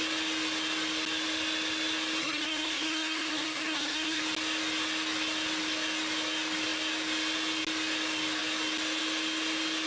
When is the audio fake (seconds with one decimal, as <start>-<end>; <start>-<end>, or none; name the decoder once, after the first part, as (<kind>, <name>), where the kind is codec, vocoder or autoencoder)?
2.2-4.2 (codec, SNAC)